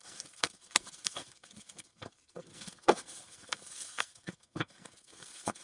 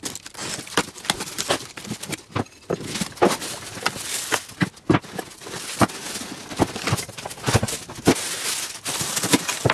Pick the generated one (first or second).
first